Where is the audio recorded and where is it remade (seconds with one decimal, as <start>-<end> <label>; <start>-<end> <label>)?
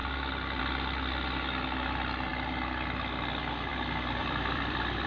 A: 0.0-4.2 recorded; 4.2-5.1 remade